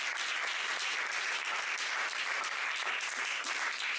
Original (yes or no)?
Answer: no